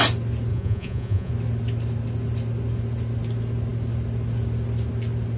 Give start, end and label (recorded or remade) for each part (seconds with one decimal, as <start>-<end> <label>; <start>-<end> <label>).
0.0-0.5 recorded; 0.5-1.3 remade; 1.3-5.4 recorded

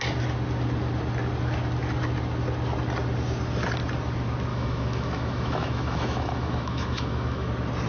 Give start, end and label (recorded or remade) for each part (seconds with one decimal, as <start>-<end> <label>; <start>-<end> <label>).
0.0-4.5 recorded; 4.5-7.5 remade; 7.5-7.9 recorded

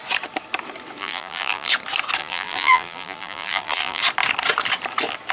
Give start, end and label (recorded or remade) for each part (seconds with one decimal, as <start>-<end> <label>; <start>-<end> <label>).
0.0-1.0 recorded; 1.0-1.7 remade; 1.7-2.2 recorded; 2.2-4.0 remade; 4.0-5.3 recorded

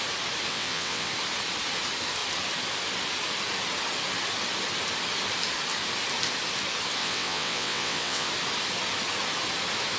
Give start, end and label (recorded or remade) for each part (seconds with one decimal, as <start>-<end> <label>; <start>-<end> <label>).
0.0-0.5 recorded; 0.5-1.1 remade; 1.1-7.0 recorded; 7.0-8.3 remade; 8.3-10.0 recorded

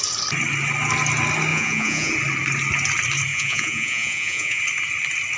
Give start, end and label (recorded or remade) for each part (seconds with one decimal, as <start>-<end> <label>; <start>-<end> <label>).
0.0-1.5 recorded; 1.5-2.1 remade; 2.1-3.3 recorded; 3.3-4.6 remade; 4.6-5.4 recorded